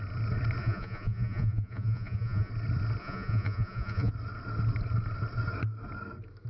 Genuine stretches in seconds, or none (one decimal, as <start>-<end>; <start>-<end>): 0.0-0.6; 2.5-3.0; 4.1-6.5